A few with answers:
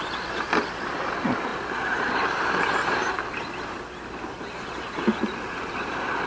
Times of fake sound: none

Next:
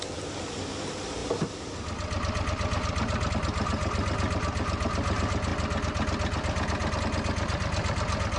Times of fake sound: none